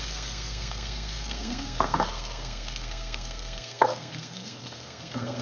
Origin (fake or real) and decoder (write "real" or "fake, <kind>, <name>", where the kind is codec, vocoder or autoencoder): fake, codec, SNAC